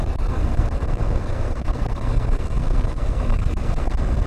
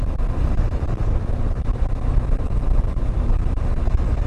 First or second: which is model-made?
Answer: first